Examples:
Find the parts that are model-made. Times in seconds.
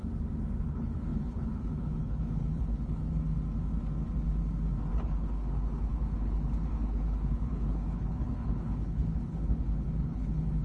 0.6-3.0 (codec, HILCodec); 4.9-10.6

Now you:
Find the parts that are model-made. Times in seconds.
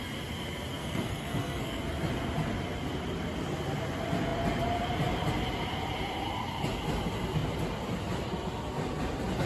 0.8-1.8 (codec, SNAC)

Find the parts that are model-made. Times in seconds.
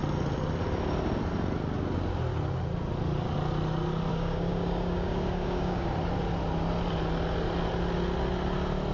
4.1-5.9 (codec, DAC)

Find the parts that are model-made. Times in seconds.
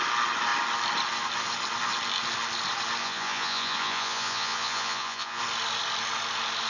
3.0-5.4 (vocoder, Vocos)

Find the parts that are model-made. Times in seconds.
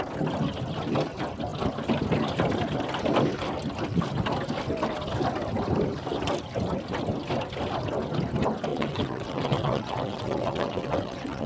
8.7-11.5 (vocoder, WaveNeXt)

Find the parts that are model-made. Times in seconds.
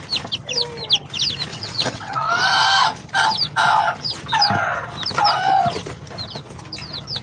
1.5-2.3 (vocoder, WaveNeXt)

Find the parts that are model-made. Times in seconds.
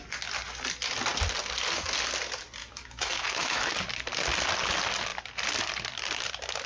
2.6-3.7 (autoencoder, DAC-VAE)